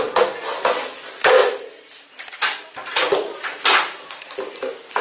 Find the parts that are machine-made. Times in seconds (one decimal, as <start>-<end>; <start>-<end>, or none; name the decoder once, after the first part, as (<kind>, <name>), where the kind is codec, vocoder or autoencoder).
1.4-3.1 (vocoder, BigVGAN v2)